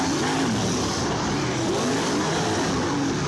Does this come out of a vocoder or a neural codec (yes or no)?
no